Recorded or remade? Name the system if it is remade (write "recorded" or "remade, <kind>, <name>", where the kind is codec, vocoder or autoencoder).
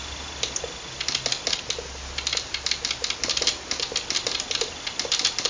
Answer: recorded